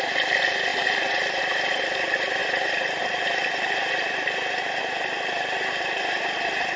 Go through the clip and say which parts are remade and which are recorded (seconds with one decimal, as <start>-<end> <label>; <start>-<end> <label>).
0.0-6.8 recorded